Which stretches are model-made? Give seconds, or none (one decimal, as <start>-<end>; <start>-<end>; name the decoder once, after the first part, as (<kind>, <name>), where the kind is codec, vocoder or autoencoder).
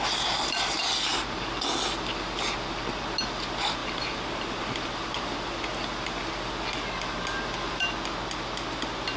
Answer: none